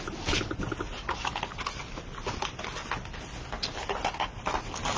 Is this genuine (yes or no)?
yes